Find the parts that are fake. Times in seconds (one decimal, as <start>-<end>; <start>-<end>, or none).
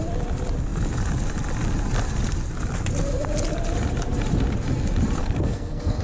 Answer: 5.2-6.0